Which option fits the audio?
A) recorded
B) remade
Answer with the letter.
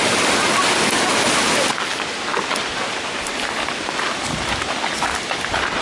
A